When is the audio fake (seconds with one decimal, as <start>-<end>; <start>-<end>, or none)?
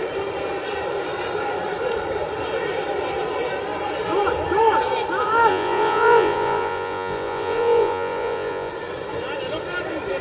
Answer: 5.5-8.7